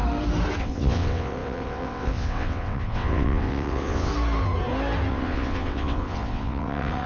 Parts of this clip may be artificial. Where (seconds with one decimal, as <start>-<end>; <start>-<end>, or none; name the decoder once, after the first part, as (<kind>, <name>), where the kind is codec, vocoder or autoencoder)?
0.6-4.1 (vocoder, WaveNeXt); 5.1-7.1